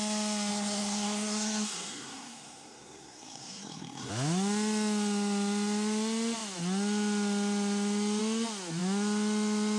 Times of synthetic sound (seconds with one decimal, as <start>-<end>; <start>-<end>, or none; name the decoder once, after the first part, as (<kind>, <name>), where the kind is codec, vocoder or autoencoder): 0.5-4.1 (codec, SNAC)